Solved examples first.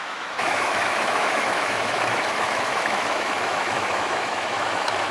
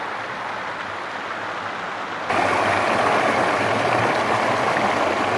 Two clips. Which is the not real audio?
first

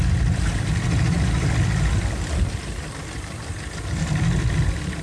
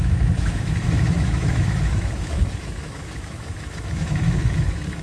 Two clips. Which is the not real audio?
second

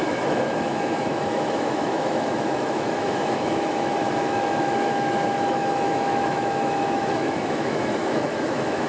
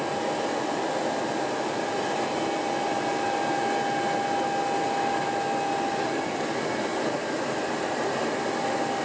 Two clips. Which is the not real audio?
first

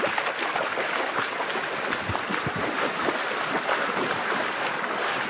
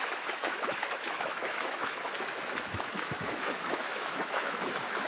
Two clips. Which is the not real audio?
second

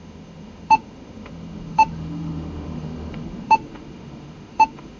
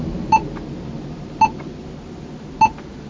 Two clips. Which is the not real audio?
first